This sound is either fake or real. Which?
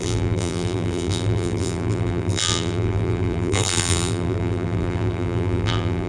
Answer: fake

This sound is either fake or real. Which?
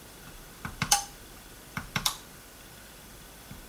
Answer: fake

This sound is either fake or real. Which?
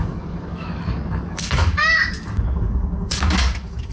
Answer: fake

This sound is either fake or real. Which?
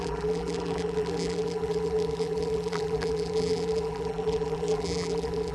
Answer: fake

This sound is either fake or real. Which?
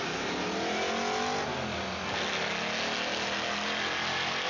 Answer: real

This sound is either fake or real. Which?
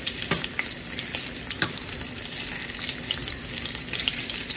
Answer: real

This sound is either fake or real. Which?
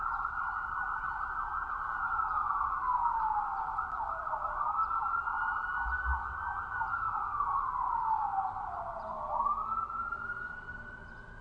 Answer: real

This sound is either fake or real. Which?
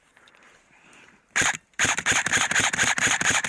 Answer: fake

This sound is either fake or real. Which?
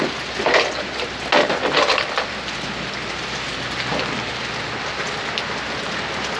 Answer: real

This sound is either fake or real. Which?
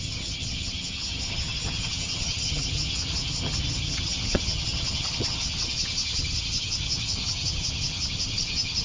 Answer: fake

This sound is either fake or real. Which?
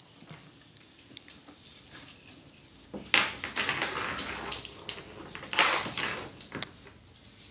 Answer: real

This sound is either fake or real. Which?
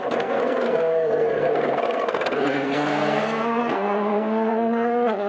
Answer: fake